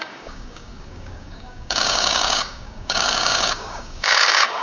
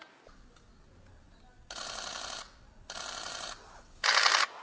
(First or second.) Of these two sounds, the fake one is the first